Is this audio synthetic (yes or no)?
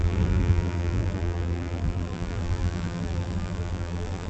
yes